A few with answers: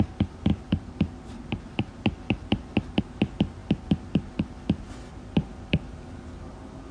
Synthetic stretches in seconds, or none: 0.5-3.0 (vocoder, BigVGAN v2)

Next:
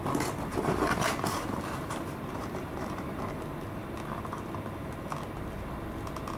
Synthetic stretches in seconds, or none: 0.5-3.2 (vocoder, BigVGAN v2)

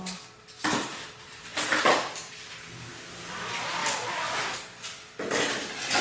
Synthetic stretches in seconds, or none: none